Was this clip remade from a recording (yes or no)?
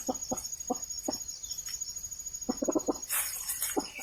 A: yes